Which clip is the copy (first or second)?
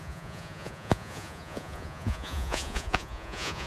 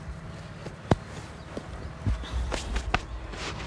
first